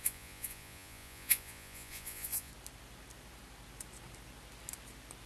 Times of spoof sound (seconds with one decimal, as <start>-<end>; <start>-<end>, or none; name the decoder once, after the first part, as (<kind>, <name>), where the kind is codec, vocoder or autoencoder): 0.0-2.5 (vocoder, Vocos)